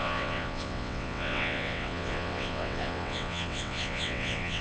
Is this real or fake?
fake